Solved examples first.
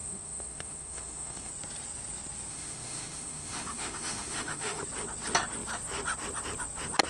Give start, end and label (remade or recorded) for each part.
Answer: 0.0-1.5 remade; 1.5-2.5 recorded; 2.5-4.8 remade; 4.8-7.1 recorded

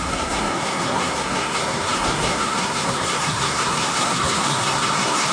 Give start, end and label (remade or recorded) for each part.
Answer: 0.0-5.3 remade

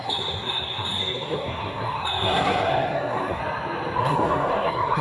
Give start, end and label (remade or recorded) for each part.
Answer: 0.0-3.4 remade; 3.4-4.0 recorded; 4.0-5.0 remade

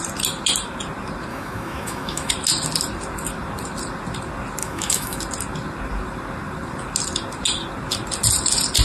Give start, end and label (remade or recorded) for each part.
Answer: 0.0-1.3 recorded; 1.3-2.3 remade; 2.3-4.6 recorded; 4.6-5.2 remade; 5.2-8.8 recorded

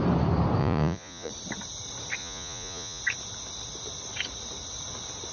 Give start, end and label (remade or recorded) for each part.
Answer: 0.0-0.6 recorded; 0.6-1.3 remade; 1.3-2.2 recorded; 2.2-3.0 remade; 3.0-5.3 recorded

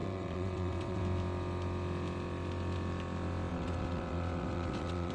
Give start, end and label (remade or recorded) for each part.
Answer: 0.0-1.0 remade; 1.0-3.5 recorded; 3.5-5.1 remade

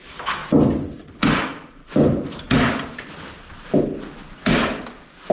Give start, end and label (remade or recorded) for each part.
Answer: 0.0-0.4 remade; 0.4-1.4 recorded; 1.4-1.8 remade; 1.8-5.3 recorded